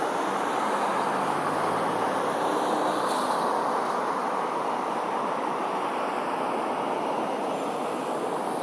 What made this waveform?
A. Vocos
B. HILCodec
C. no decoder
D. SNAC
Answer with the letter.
C